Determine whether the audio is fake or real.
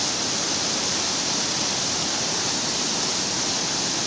real